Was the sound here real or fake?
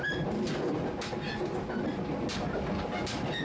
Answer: real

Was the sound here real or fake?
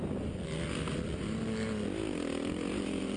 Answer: real